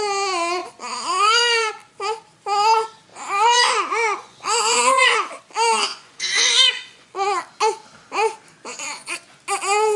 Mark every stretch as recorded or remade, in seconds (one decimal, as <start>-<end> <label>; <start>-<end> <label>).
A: 0.0-0.6 recorded; 0.6-1.7 remade; 1.7-3.1 recorded; 3.1-5.4 remade; 5.4-5.9 recorded; 5.9-7.4 remade; 7.4-8.7 recorded; 8.7-9.4 remade; 9.4-10.0 recorded